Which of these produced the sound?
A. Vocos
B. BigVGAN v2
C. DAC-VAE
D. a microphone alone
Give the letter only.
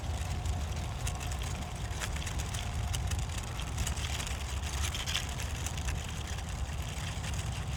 D